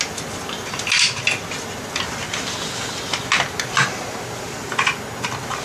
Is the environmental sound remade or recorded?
recorded